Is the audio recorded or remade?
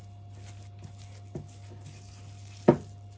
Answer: recorded